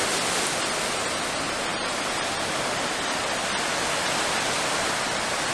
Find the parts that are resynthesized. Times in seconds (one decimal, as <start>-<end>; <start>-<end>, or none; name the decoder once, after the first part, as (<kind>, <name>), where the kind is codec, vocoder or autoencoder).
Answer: none